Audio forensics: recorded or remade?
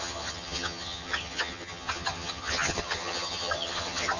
remade